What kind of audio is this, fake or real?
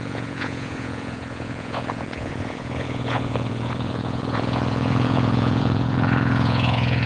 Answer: fake